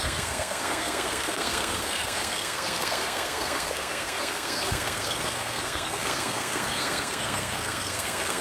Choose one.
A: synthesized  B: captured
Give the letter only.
A